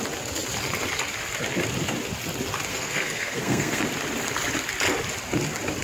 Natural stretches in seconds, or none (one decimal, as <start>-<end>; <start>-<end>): 0.0-2.7; 3.8-5.8